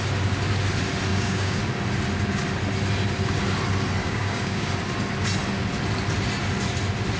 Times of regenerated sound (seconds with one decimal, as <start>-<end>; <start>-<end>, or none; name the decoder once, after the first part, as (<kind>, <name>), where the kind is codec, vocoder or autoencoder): 1.1-1.6 (codec, DAC); 4.0-4.7